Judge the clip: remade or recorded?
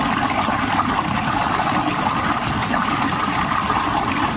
recorded